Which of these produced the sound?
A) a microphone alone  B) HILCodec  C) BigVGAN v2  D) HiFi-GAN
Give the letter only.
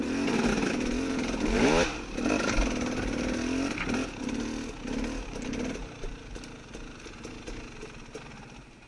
A